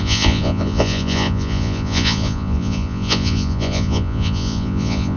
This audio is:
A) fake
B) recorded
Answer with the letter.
A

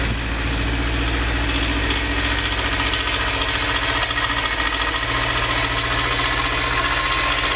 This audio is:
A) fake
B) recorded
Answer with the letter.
B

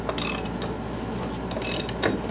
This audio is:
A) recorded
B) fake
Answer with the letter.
A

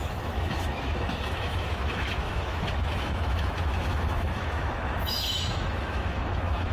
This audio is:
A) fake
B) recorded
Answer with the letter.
A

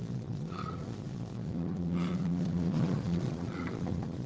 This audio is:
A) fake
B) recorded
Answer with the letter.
A